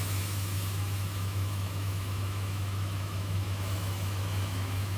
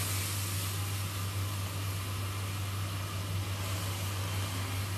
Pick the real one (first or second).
second